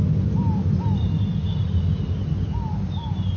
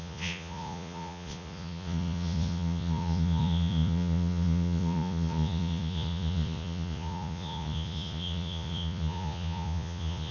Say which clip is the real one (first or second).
first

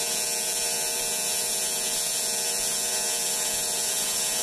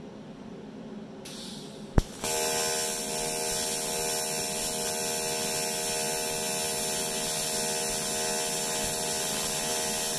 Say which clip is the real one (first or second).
second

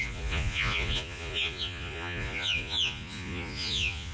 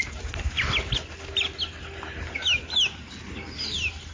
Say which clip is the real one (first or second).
second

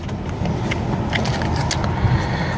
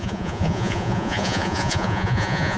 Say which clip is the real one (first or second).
first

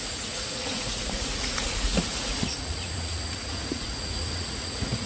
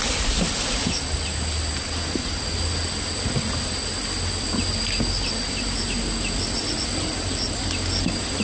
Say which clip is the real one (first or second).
second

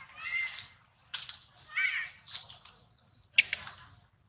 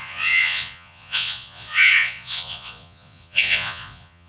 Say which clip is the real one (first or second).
first